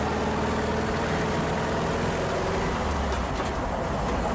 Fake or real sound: real